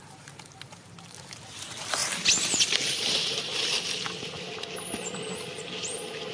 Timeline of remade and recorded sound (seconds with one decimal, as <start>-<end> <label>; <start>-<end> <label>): 0.0-6.3 recorded